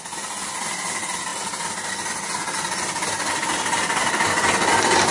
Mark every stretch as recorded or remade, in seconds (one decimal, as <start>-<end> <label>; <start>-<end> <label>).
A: 0.0-5.1 recorded